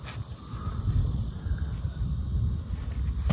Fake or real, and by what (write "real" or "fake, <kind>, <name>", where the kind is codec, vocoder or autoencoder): real